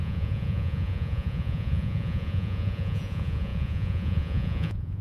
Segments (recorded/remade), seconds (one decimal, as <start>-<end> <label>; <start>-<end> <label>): 0.0-5.0 remade